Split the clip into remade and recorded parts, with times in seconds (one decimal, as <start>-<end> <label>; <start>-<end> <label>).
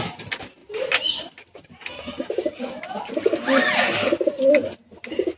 0.0-0.6 recorded; 0.6-1.3 remade; 1.3-5.4 recorded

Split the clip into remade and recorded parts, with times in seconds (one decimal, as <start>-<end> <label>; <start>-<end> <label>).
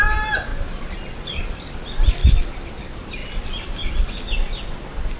0.0-5.2 recorded